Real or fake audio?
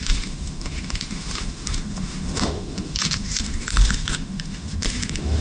fake